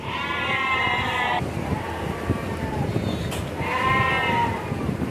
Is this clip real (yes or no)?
no